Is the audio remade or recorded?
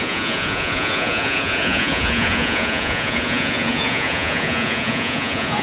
remade